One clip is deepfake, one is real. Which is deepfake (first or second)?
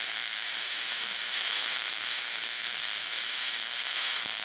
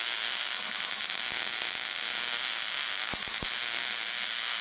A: first